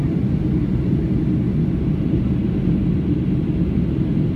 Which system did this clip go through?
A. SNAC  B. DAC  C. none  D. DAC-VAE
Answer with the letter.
C